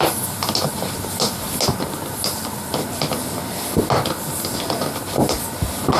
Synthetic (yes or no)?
no